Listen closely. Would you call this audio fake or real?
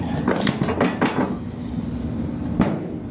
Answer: real